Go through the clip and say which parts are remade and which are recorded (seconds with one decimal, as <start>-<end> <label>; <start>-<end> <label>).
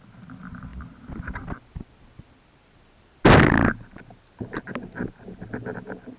0.0-6.2 recorded